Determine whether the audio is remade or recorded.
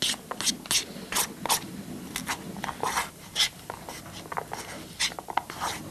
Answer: recorded